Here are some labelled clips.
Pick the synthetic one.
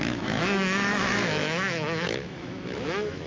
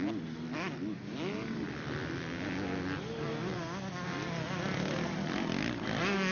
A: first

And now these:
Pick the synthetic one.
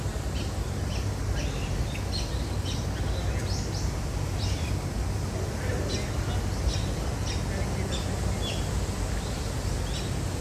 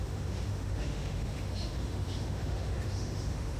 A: second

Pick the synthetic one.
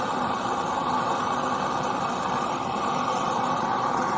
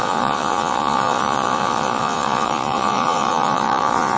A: second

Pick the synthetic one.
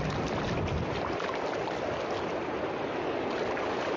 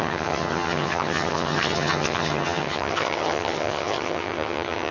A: second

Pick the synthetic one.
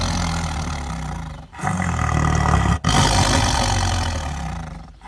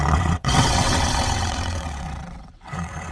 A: second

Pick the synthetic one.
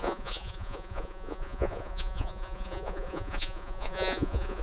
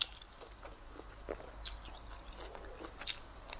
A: first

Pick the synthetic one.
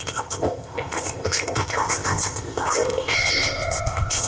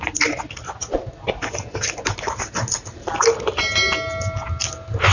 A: first